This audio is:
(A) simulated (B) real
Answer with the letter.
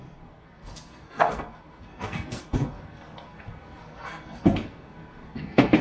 A